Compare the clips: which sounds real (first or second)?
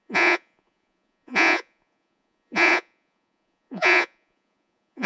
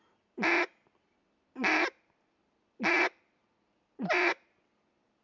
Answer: second